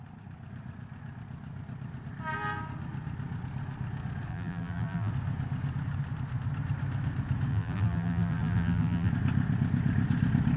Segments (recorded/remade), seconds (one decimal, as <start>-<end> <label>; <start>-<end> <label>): 0.0-4.3 recorded; 4.3-5.1 remade; 5.1-7.5 recorded; 7.5-9.1 remade; 9.1-10.6 recorded